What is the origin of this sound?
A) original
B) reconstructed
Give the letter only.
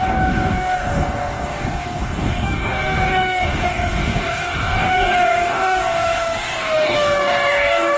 B